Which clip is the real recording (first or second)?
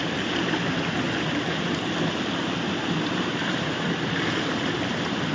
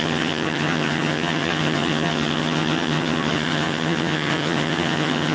first